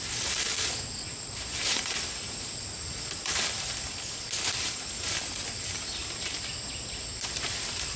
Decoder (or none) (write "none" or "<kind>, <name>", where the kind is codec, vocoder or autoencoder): none